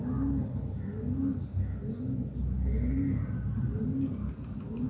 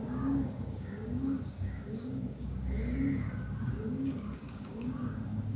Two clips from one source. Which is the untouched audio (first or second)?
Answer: first